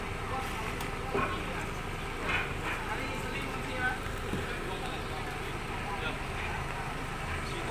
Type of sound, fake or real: real